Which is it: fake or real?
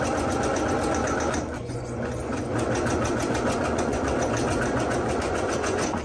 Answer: fake